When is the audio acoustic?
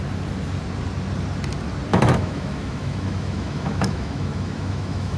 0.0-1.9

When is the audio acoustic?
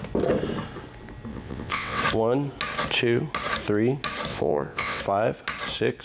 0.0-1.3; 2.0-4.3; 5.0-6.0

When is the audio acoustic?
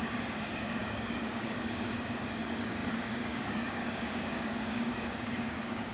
none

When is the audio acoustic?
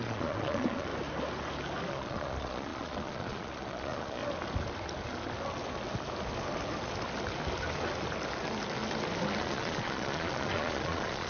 0.9-1.9; 4.2-9.4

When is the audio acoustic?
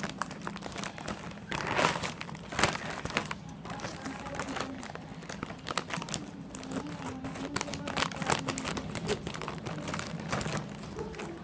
0.0-11.4